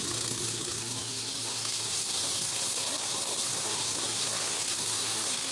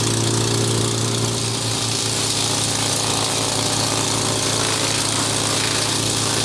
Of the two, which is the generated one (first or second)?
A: first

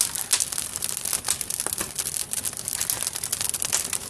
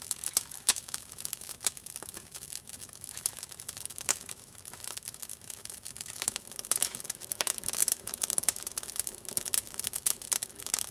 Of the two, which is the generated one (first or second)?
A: second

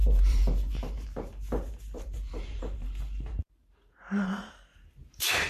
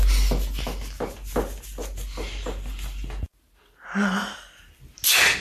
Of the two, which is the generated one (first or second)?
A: first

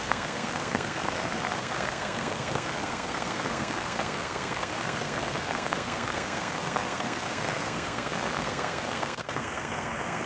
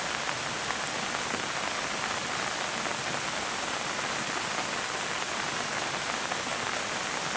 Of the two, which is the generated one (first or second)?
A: first